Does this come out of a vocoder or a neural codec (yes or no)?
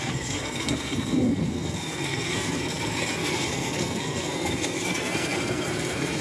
yes